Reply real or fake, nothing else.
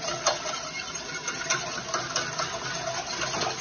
real